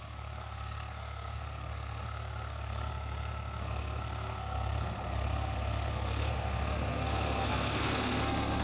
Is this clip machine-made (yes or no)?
yes